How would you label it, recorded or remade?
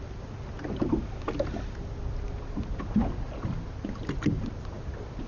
recorded